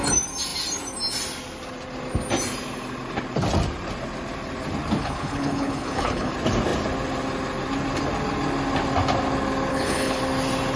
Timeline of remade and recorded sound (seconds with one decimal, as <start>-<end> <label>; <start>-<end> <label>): 0.0-5.0 recorded; 5.0-6.3 remade; 6.3-9.7 recorded; 9.7-10.2 remade; 10.2-10.8 recorded